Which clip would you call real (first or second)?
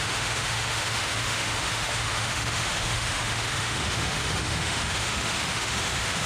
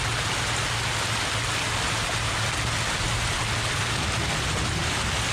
second